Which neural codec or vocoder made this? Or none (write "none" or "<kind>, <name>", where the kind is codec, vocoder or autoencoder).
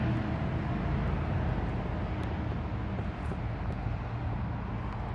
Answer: none